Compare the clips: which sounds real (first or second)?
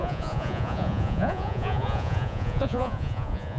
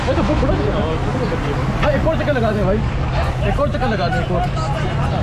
second